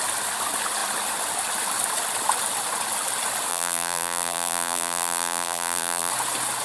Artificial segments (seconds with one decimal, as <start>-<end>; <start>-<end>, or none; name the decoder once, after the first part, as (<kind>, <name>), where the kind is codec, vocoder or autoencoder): 3.5-6.1 (vocoder, BigVGAN v2)